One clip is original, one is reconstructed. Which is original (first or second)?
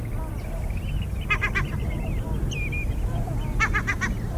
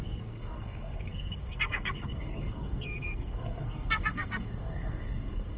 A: first